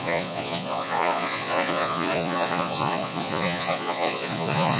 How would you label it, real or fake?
fake